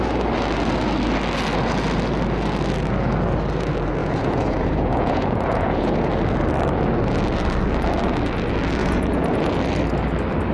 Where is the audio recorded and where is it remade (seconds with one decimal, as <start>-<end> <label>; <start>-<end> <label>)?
0.0-4.0 recorded; 4.0-6.1 remade; 6.1-8.8 recorded; 8.8-9.5 remade; 9.5-10.5 recorded